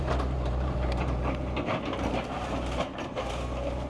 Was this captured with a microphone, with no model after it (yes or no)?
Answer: no